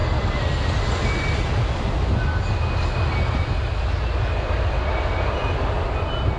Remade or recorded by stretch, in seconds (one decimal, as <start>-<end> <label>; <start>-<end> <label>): 0.0-6.4 recorded